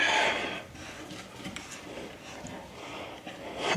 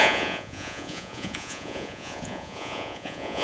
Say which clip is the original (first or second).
first